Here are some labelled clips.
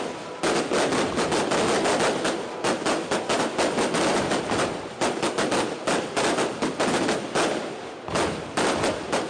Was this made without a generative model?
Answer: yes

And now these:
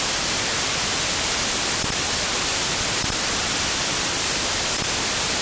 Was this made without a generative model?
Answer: yes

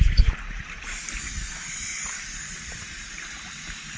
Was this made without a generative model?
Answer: yes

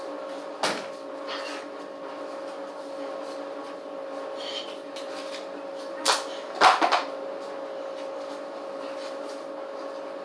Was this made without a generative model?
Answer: yes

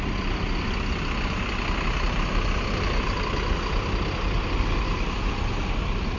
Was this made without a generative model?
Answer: yes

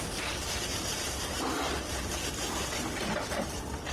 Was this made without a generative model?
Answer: no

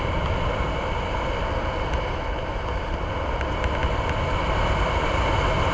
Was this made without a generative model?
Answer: yes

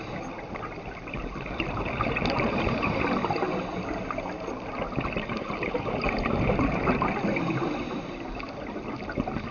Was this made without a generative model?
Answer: yes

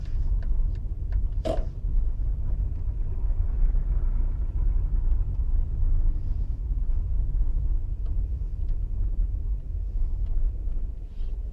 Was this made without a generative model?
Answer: yes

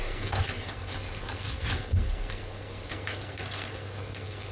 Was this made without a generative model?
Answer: no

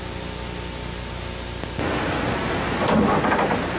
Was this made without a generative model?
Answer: yes